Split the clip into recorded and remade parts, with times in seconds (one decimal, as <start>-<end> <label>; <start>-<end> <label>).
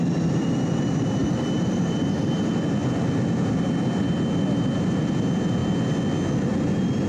0.0-1.2 remade; 1.2-2.0 recorded; 2.0-2.8 remade; 2.8-3.5 recorded; 3.5-5.6 remade; 5.6-6.5 recorded; 6.5-7.1 remade